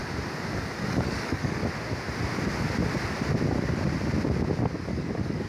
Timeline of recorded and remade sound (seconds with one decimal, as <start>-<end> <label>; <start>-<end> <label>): 0.0-0.8 recorded; 0.8-1.6 remade; 1.6-4.9 recorded; 4.9-5.5 remade